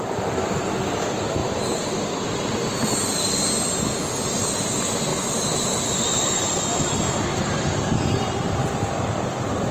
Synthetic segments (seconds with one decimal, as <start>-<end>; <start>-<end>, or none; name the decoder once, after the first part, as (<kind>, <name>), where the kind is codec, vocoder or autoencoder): 5.1-6.6 (vocoder, BigVGAN v2); 7.3-9.2

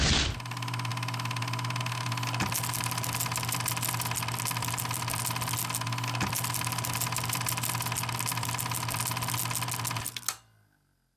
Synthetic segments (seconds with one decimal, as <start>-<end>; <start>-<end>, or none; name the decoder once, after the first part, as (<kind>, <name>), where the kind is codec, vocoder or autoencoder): none

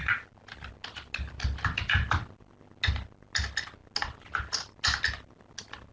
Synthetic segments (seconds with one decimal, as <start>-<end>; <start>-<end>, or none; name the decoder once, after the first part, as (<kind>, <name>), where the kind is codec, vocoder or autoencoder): none